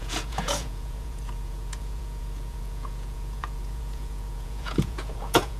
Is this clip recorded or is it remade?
remade